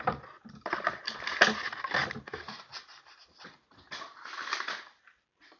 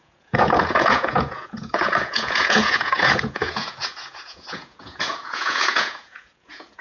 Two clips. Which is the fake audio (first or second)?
second